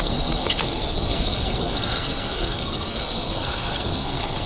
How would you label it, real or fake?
fake